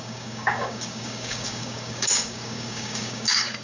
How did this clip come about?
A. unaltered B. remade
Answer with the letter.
B